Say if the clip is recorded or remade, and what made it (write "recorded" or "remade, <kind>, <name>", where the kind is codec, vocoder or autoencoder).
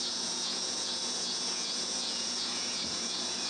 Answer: remade, vocoder, Vocos